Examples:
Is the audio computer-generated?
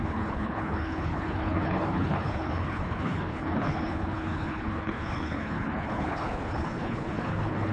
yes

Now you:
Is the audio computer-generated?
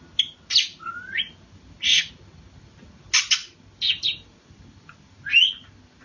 no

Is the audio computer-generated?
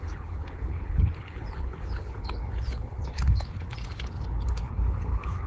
yes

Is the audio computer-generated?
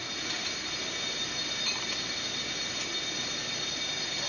no